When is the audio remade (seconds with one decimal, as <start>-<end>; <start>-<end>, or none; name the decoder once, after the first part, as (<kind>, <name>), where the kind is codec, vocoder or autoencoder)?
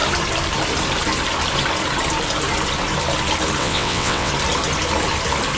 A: 3.6-4.3 (vocoder, WaveNeXt)